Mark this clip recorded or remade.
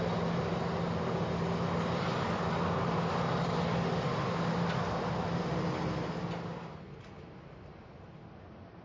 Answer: recorded